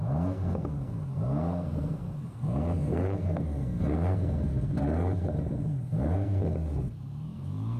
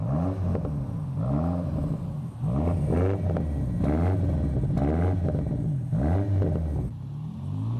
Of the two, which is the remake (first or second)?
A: first